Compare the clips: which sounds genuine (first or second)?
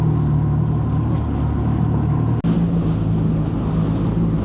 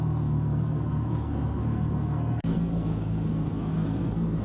first